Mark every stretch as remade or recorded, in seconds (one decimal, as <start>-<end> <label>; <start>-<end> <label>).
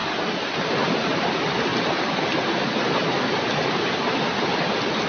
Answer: 0.0-5.1 recorded